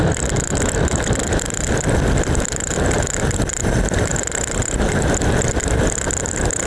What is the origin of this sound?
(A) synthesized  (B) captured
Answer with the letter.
B